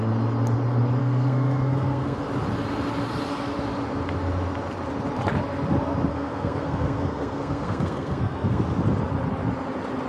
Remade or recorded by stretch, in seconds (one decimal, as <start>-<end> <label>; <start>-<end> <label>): 0.0-1.0 recorded; 1.0-2.2 remade; 2.2-6.1 recorded; 6.1-8.6 remade; 8.6-10.1 recorded